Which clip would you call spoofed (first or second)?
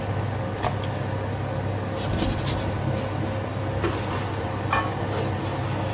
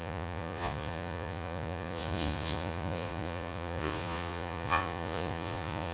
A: second